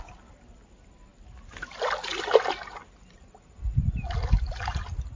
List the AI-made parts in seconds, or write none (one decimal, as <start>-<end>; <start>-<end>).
none